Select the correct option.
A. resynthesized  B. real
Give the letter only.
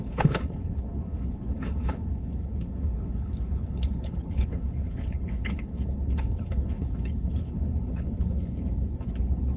A